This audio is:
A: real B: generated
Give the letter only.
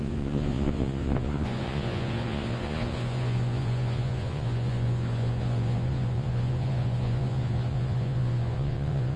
B